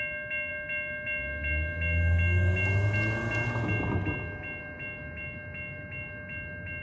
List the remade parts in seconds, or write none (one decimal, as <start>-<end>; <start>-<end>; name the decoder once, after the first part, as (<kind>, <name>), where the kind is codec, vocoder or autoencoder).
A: none